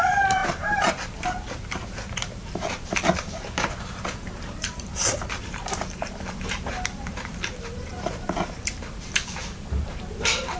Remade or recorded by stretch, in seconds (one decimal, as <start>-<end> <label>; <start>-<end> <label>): 0.0-10.6 remade